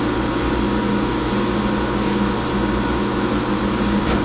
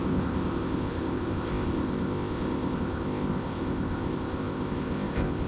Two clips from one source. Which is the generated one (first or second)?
second